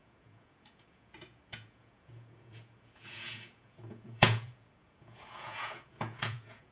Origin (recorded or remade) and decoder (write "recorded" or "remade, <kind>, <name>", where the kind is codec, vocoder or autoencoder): remade, vocoder, Vocos